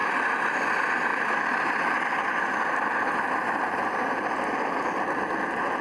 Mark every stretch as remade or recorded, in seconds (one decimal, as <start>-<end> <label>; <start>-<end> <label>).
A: 0.0-5.8 recorded